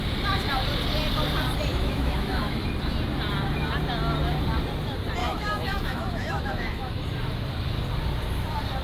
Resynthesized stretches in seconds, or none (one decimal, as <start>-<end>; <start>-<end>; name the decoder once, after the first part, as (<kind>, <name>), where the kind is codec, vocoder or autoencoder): 1.7-2.6 (autoencoder, DAC-VAE); 5.2-6.9